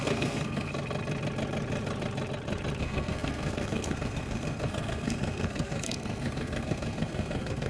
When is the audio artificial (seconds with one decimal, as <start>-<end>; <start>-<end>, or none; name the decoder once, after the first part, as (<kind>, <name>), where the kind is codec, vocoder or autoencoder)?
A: 0.0-0.7 (codec, SNAC); 2.8-7.7